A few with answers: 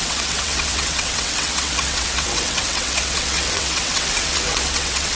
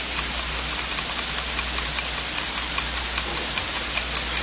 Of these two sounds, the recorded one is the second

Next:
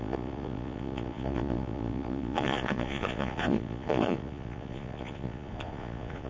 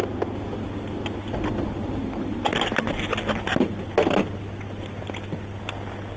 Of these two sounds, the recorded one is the second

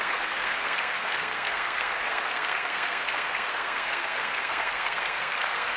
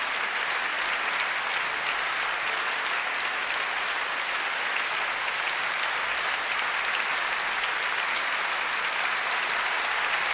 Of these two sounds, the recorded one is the second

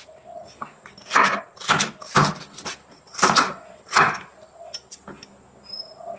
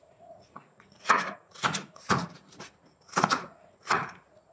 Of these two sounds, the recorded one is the first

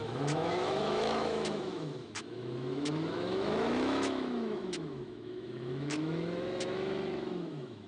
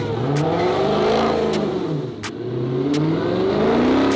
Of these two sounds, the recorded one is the second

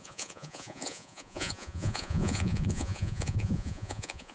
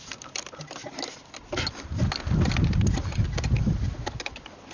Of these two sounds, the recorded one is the second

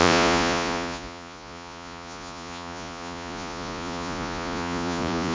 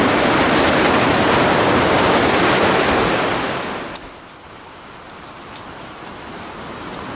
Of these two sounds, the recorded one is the second